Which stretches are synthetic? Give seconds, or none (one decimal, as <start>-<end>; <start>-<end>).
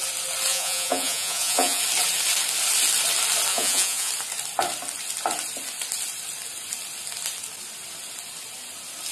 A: 0.5-1.8; 3.5-4.1